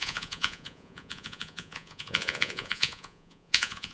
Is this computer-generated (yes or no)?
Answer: yes